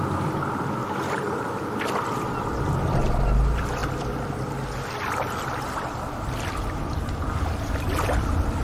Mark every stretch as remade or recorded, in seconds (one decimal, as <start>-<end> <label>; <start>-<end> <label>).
0.0-8.6 recorded